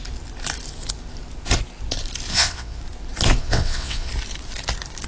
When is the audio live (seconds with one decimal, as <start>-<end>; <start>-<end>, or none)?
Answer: 0.0-2.3; 2.8-3.4; 4.1-5.1